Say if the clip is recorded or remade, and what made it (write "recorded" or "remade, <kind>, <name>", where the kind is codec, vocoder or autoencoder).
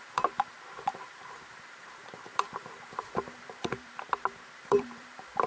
remade, vocoder, BigVGAN v2